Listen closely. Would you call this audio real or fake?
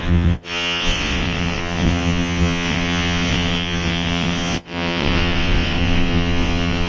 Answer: fake